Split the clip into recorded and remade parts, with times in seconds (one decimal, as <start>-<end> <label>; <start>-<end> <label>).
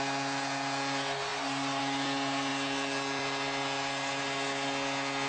0.0-5.3 recorded